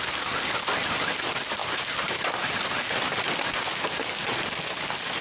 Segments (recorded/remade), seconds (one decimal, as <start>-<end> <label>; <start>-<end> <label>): 0.0-5.2 recorded